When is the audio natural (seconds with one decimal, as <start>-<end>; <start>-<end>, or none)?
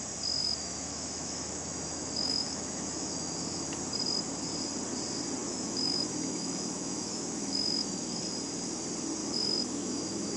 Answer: 0.0-0.4; 3.8-5.4; 8.0-9.2